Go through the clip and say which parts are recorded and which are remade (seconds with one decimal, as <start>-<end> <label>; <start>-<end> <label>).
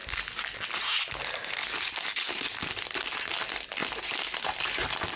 0.0-5.2 recorded